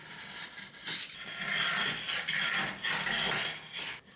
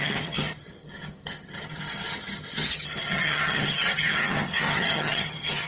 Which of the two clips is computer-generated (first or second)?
second